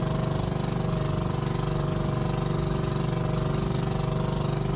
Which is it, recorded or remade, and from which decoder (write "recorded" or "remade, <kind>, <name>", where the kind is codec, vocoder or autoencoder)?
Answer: recorded